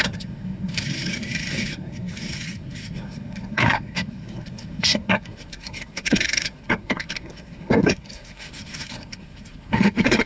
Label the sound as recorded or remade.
remade